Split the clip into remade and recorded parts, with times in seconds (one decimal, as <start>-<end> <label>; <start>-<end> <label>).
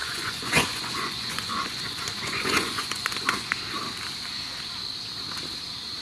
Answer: 0.0-3.6 remade; 3.6-6.0 recorded